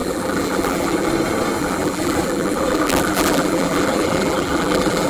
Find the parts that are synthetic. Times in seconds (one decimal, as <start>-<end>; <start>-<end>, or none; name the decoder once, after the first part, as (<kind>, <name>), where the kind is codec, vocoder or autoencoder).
0.0-1.1 (vocoder, BigVGAN v2); 1.6-5.1